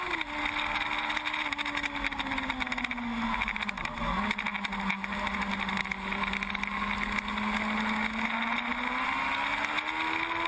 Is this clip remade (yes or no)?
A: no